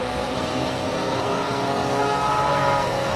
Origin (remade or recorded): remade